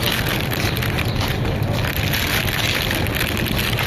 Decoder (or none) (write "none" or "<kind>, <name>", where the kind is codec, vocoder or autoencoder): none